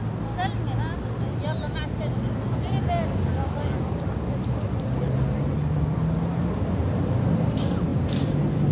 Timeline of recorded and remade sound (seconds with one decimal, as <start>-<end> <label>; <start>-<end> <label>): 0.0-7.9 recorded; 7.9-8.7 remade